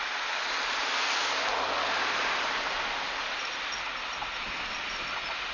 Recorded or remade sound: recorded